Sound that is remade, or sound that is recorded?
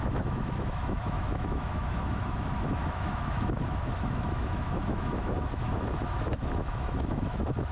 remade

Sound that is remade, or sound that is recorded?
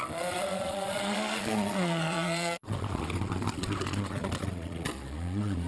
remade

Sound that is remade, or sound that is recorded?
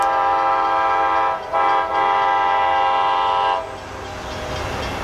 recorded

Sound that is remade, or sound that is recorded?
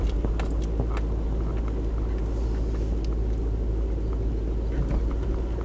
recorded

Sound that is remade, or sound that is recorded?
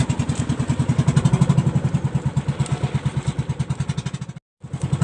recorded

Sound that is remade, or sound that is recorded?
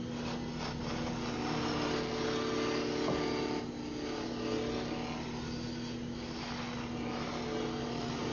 recorded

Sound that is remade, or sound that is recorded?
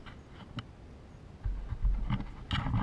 recorded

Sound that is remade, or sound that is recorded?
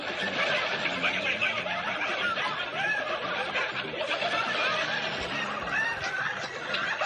recorded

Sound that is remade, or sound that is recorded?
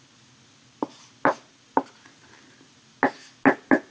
recorded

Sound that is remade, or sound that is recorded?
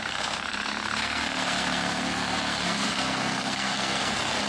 remade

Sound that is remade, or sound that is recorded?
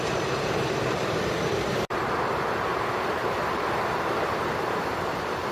remade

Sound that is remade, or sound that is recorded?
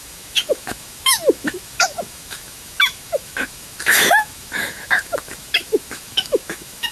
remade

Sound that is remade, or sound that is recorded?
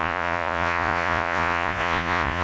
remade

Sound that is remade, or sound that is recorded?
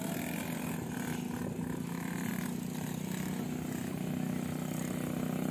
recorded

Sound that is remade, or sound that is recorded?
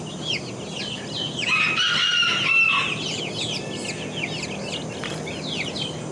recorded